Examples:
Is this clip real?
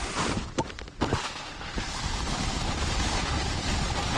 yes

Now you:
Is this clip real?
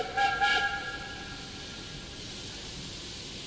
yes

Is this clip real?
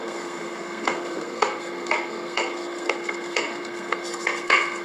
no